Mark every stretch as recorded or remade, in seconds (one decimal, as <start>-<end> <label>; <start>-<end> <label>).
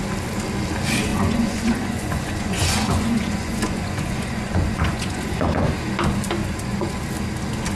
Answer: 0.0-1.1 recorded; 1.1-5.7 remade; 5.7-6.4 recorded; 6.4-7.0 remade; 7.0-7.7 recorded